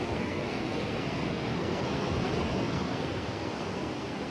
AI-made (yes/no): yes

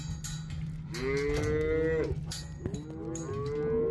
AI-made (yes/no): no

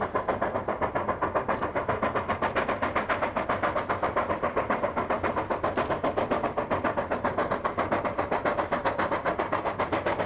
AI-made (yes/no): no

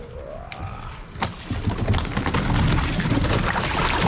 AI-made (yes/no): no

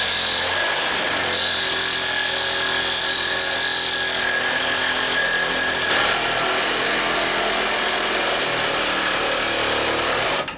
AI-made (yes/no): no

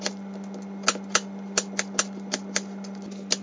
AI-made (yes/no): no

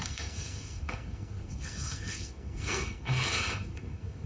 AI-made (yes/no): yes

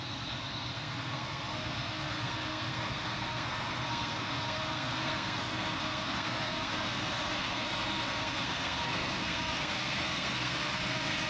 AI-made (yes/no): yes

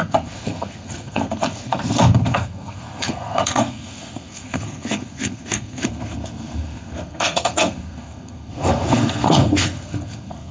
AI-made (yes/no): yes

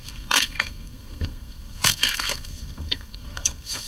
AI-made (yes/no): yes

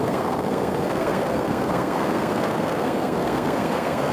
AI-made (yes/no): yes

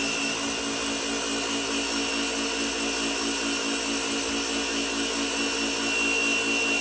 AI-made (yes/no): no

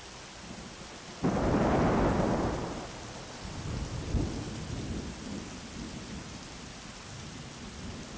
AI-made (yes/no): no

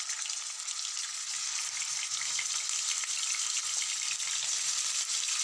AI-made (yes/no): no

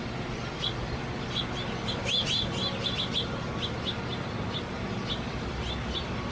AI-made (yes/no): no